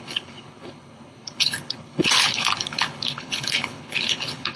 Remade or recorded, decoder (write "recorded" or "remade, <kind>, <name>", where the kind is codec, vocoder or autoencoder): remade, codec, HILCodec